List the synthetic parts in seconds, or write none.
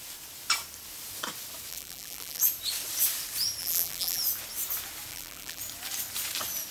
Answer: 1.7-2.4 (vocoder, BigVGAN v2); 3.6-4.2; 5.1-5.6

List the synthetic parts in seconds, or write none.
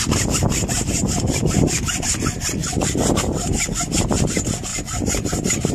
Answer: 2.6-3.2 (vocoder, BigVGAN v2); 4.7-5.7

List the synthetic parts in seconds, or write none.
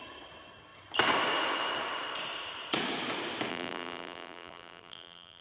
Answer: 3.5-5.4 (vocoder, BigVGAN v2)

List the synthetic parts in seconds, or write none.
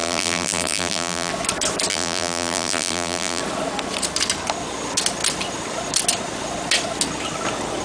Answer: 0.0-1.3 (vocoder, BigVGAN v2); 1.9-3.4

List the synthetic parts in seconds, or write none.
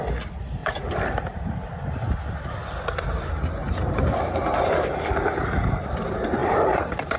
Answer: 0.6-2.0 (vocoder, BigVGAN v2); 3.6-5.4; 6.4-7.2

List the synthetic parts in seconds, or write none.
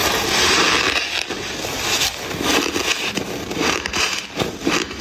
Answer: 3.0-5.0 (vocoder, BigVGAN v2)